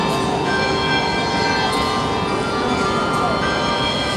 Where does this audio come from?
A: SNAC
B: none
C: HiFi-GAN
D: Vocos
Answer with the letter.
D